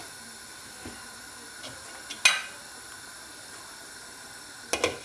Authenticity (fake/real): real